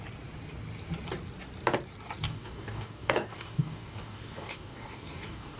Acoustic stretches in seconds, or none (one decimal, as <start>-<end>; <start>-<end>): 0.0-2.3